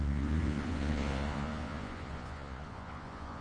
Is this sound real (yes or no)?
no